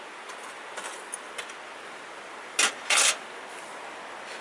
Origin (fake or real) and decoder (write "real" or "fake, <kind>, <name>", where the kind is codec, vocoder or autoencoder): real